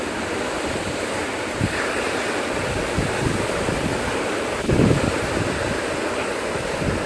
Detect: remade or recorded recorded